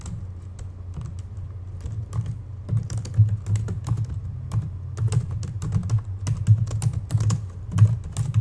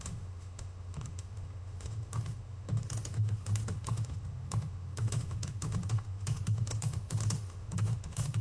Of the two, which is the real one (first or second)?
first